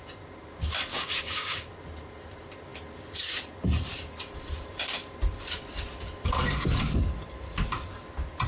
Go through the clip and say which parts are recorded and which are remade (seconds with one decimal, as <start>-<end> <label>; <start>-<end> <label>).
0.0-0.9 recorded; 0.9-1.7 remade; 1.7-8.5 recorded